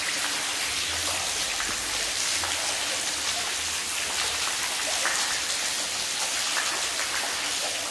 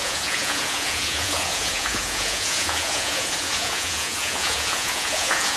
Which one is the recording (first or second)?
first